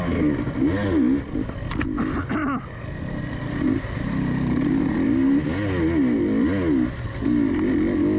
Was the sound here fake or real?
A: real